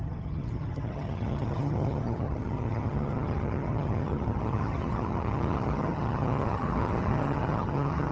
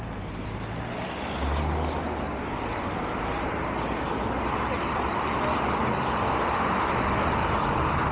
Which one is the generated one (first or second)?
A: first